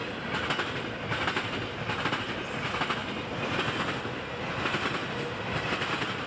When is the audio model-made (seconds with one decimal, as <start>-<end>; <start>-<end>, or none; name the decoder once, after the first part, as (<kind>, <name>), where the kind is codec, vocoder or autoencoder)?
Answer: 0.0-3.0 (vocoder, BigVGAN v2); 4.5-6.3